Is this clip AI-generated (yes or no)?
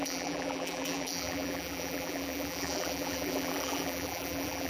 yes